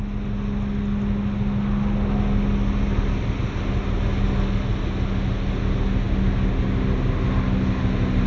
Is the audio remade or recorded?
recorded